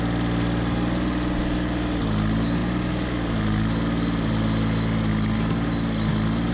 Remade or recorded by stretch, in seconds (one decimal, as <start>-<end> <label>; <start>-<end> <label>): 0.0-6.5 recorded